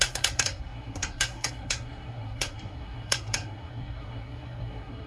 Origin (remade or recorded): remade